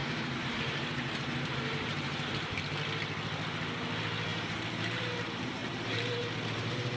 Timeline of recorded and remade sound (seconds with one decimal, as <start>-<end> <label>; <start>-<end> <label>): 0.0-2.6 remade; 2.6-4.3 recorded; 4.3-5.0 remade; 5.0-5.6 recorded; 5.6-7.0 remade